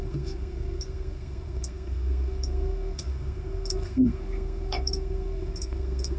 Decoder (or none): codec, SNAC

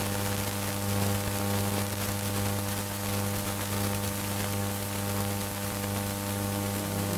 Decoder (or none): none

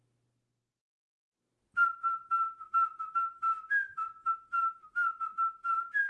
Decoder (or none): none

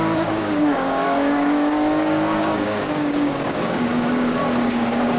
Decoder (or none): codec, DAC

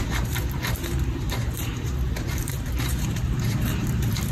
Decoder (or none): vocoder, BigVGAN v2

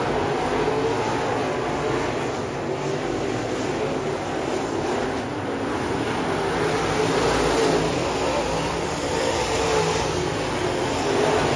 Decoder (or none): none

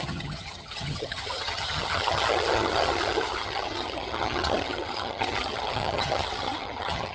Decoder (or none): vocoder, HiFi-GAN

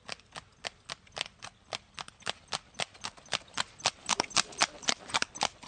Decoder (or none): none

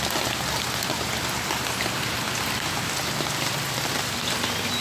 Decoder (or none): none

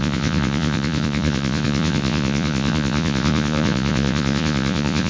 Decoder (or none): vocoder, Vocos